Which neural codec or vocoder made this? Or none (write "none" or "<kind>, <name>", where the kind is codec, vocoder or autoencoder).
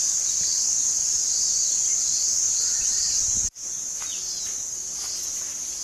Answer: none